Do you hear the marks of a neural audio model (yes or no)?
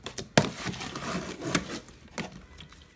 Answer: no